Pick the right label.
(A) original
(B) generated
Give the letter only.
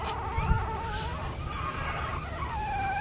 A